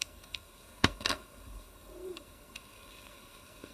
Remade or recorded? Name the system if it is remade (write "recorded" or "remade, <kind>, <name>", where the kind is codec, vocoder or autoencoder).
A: remade, codec, SNAC